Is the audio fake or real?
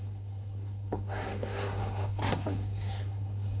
fake